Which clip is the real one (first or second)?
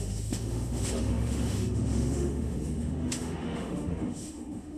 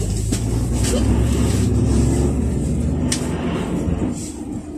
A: second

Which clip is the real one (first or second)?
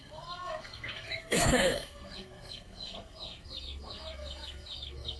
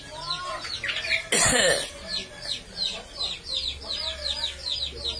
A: second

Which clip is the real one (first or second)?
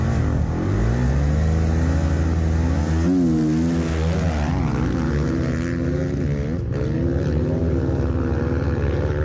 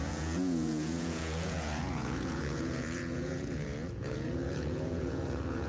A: first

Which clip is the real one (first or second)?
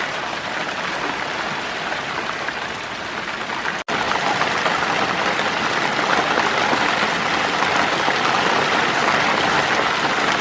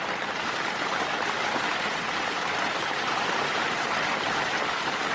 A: first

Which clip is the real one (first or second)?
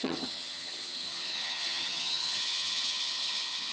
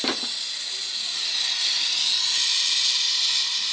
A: second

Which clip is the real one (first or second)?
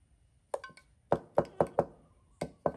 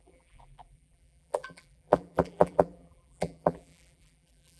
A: first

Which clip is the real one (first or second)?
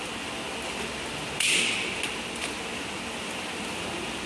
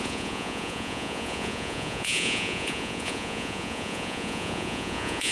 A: first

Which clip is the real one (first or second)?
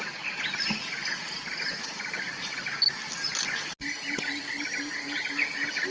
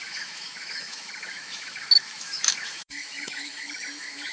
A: first